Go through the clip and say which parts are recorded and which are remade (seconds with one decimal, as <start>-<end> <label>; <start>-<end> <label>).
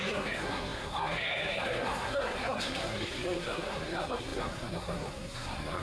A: 0.0-5.8 remade